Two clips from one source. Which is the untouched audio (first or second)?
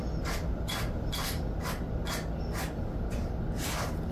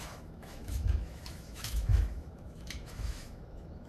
first